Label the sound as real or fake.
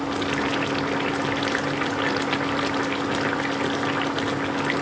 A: real